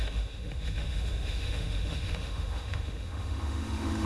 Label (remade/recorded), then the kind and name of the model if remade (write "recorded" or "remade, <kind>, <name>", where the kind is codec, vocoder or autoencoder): remade, autoencoder, DAC-VAE